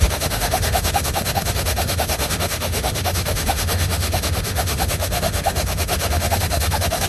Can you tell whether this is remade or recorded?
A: remade